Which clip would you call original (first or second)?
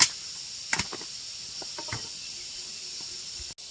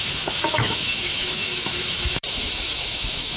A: first